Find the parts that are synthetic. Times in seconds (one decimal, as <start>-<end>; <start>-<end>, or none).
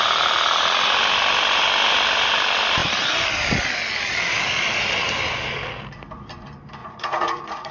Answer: 6.8-7.7